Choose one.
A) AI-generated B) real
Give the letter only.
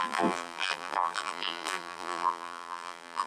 A